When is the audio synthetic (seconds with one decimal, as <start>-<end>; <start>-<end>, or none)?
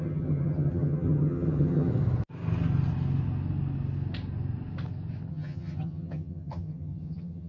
0.0-1.9; 5.3-7.5